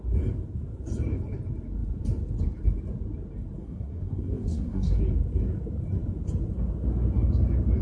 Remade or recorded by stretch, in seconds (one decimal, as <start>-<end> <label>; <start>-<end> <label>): 0.0-3.6 recorded; 3.6-5.0 remade; 5.0-7.8 recorded